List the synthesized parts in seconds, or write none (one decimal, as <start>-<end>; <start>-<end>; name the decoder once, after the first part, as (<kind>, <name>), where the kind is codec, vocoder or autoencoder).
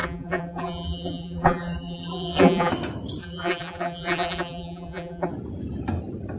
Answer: 0.0-2.7 (vocoder, BigVGAN v2); 3.2-5.3